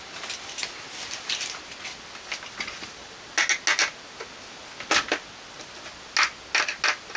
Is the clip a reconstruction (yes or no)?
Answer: no